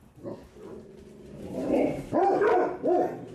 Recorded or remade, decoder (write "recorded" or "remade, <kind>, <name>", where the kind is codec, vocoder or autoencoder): recorded